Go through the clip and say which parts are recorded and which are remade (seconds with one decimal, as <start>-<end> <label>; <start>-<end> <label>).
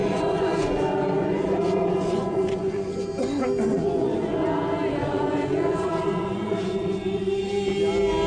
0.0-2.9 remade; 2.9-3.7 recorded; 3.7-4.3 remade; 4.3-5.0 recorded; 5.0-7.5 remade; 7.5-8.3 recorded